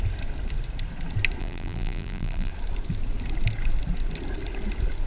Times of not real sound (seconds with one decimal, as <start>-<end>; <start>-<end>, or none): 1.4-2.5